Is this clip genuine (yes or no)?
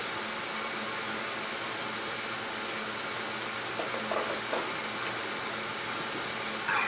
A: yes